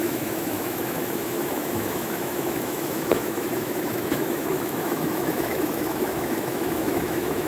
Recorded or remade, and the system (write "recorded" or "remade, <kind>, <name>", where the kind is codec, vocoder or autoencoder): remade, autoencoder, DAC-VAE